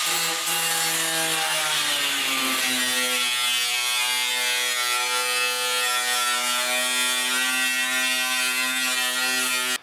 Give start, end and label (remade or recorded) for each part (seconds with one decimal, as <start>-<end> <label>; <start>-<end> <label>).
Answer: 0.0-9.8 recorded